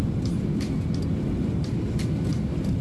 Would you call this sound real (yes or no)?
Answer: yes